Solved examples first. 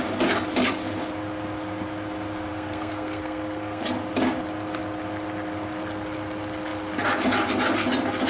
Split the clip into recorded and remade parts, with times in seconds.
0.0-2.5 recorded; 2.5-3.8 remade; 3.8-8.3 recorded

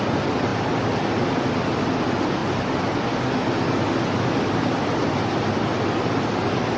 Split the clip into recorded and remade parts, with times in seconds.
0.0-6.8 recorded

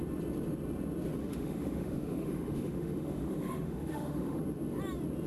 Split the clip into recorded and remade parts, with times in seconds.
0.0-1.2 recorded; 1.2-4.4 remade; 4.4-5.3 recorded

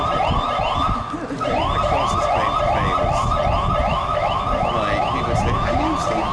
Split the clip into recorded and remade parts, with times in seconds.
0.0-3.9 recorded; 3.9-4.4 remade; 4.4-6.3 recorded

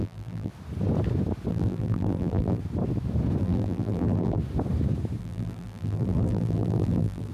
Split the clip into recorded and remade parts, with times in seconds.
0.0-0.5 remade; 0.5-1.5 recorded; 1.5-2.6 remade; 2.6-3.4 recorded; 3.4-4.4 remade; 4.4-5.2 recorded; 5.2-7.3 remade

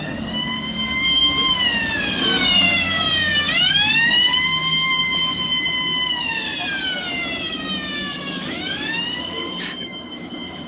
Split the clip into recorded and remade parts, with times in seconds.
0.0-6.5 remade; 6.5-7.5 recorded; 7.5-10.7 remade